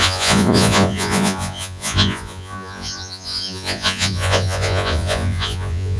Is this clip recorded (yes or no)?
no